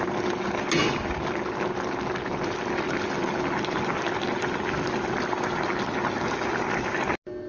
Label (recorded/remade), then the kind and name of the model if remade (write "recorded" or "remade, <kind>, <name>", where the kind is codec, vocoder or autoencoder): recorded